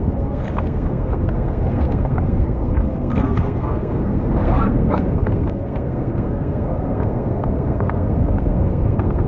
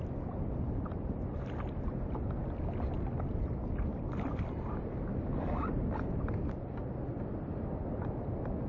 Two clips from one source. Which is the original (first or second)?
second